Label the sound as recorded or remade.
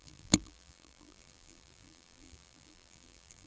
remade